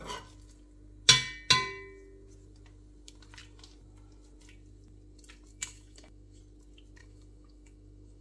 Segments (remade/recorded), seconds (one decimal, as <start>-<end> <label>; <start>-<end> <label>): 0.0-5.5 recorded; 5.5-6.4 remade; 6.4-7.0 recorded; 7.0-8.2 remade